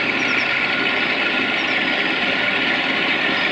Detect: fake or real real